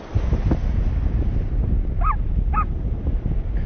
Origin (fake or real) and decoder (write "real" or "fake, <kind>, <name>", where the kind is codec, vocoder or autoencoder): real